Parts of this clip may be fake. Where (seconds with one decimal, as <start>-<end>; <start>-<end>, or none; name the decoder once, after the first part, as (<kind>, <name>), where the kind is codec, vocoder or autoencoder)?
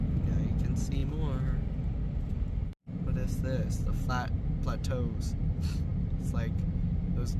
none